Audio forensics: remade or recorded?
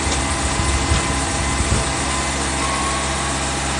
recorded